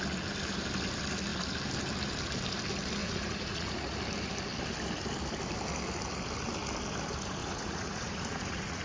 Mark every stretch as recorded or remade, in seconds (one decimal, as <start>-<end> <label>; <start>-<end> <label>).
0.0-3.0 recorded; 3.0-4.0 remade; 4.0-7.4 recorded; 7.4-8.8 remade